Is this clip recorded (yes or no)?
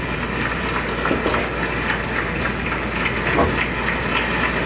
yes